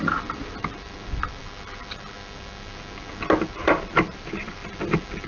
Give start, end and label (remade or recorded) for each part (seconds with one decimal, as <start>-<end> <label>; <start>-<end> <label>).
0.0-1.4 remade; 1.4-3.5 recorded; 3.5-4.6 remade; 4.6-5.3 recorded